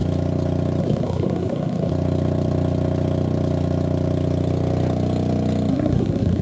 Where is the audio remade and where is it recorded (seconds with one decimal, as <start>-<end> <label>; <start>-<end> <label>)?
0.0-0.8 recorded; 0.8-1.9 remade; 1.9-5.7 recorded; 5.7-6.4 remade